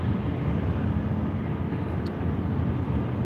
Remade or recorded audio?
recorded